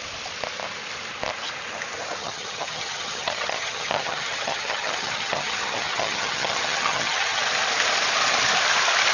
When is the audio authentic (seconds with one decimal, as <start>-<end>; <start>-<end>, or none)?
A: 0.0-2.2; 7.4-9.1